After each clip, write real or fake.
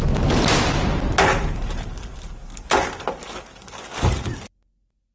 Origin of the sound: real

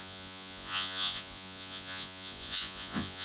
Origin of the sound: fake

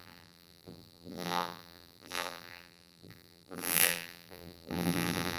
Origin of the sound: fake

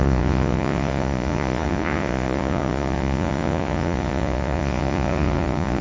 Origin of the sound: fake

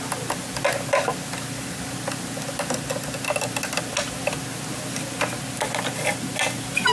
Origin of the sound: real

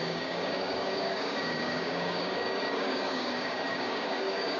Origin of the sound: fake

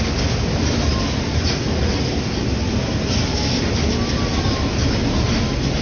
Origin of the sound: real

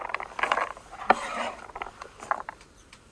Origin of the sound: fake